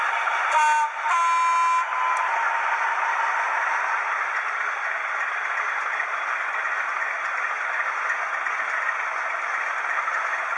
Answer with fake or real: real